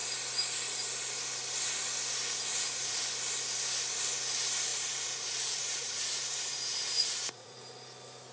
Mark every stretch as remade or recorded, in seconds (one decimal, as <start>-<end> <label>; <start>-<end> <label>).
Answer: 0.0-2.5 recorded; 2.5-3.0 remade; 3.0-4.7 recorded; 4.7-7.6 remade; 7.6-8.3 recorded